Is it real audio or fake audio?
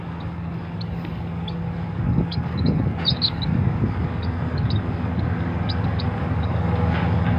fake